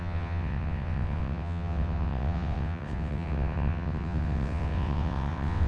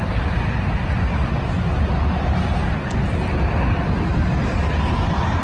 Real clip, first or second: second